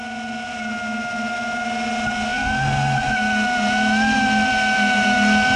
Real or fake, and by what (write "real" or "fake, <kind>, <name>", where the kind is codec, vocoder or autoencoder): real